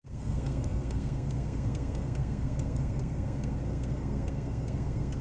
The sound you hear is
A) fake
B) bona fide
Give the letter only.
A